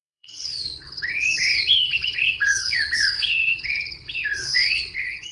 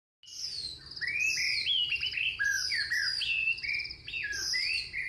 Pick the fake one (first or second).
first